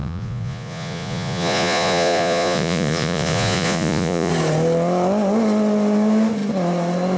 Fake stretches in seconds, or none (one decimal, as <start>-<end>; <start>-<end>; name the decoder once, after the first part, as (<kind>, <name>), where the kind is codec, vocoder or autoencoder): 0.0-4.3 (vocoder, Vocos)